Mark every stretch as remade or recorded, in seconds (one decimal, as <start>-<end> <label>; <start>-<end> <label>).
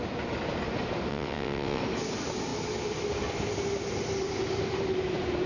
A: 0.0-1.1 recorded; 1.1-1.8 remade; 1.8-5.5 recorded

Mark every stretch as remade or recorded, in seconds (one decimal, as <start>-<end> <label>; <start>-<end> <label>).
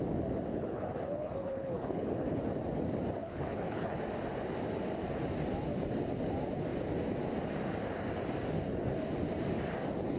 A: 0.0-0.5 recorded; 0.5-2.4 remade; 2.4-3.2 recorded; 3.2-4.0 remade; 4.0-10.2 recorded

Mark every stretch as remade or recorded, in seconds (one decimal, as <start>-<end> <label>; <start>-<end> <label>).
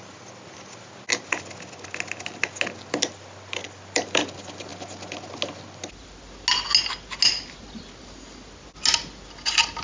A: 0.0-9.8 recorded